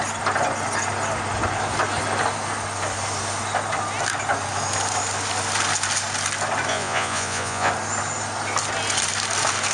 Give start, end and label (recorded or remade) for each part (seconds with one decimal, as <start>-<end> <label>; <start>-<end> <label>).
0.0-6.7 recorded; 6.7-7.7 remade; 7.7-9.7 recorded